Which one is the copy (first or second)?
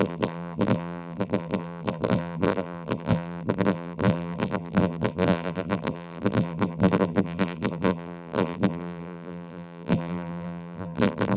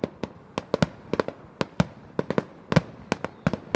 first